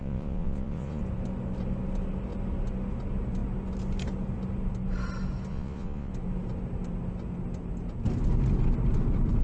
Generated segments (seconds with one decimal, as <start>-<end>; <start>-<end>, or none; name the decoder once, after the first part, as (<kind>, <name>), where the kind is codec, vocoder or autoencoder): 0.0-1.0 (vocoder, Vocos); 5.5-6.1